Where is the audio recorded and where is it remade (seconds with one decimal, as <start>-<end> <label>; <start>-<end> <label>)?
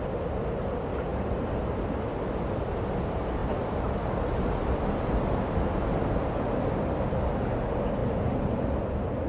0.0-1.1 recorded; 1.1-1.9 remade; 1.9-3.4 recorded; 3.4-3.9 remade; 3.9-9.3 recorded